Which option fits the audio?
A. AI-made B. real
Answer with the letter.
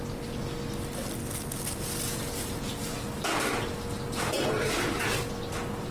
B